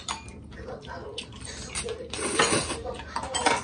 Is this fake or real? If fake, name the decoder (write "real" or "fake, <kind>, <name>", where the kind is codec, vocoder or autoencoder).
real